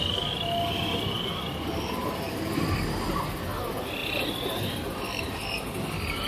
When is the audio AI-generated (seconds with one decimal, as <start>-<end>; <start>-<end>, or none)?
2.0-3.2